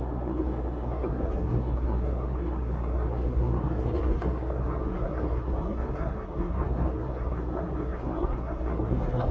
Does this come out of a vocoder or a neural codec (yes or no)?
yes